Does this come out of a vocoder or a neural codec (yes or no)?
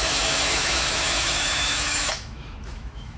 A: yes